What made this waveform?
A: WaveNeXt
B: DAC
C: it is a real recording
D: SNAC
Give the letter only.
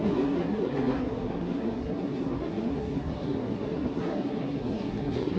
D